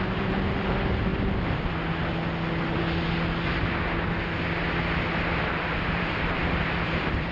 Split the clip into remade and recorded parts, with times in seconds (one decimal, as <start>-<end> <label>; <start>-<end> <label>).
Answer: 0.0-1.1 remade; 1.1-5.5 recorded; 5.5-7.3 remade